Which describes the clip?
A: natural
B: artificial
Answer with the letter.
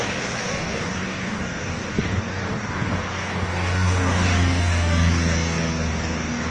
B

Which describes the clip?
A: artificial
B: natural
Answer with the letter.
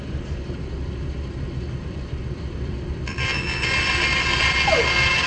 B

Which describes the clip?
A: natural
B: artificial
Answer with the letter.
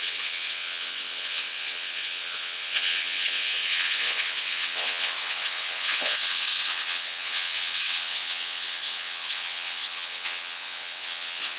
B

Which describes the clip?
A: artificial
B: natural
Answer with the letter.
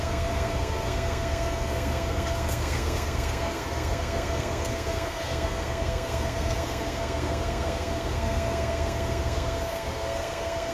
A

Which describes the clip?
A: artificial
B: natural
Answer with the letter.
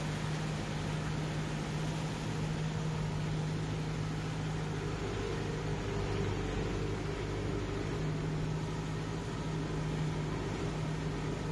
B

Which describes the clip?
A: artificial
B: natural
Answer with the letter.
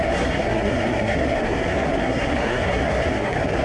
A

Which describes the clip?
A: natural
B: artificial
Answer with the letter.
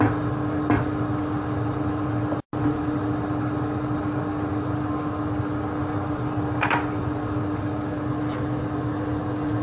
A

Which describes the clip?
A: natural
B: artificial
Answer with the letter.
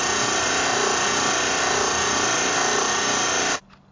A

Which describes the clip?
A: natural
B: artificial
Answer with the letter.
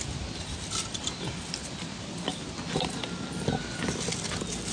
A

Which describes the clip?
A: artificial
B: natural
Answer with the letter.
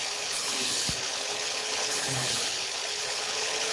A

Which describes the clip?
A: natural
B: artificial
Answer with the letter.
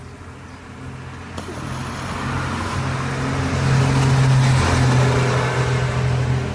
A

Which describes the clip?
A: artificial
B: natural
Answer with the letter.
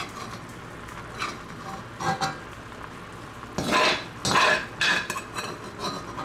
B